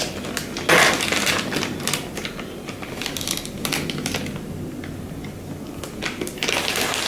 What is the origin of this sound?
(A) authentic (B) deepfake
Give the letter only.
A